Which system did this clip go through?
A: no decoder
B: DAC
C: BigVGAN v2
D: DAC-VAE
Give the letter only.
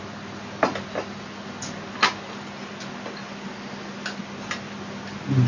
A